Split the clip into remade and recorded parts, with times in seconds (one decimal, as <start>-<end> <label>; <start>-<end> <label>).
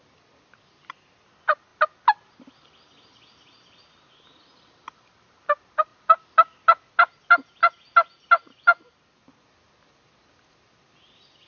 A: 0.0-11.5 recorded